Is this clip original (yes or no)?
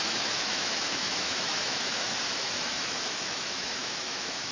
no